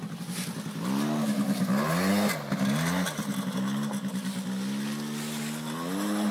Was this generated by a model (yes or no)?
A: no